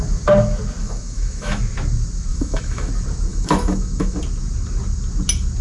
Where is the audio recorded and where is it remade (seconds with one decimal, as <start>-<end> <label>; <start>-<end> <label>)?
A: 0.0-0.8 recorded; 0.8-1.6 remade; 1.6-2.3 recorded; 2.3-2.9 remade; 2.9-3.3 recorded; 3.3-4.2 remade; 4.2-5.6 recorded